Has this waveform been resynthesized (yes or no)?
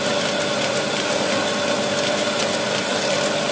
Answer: no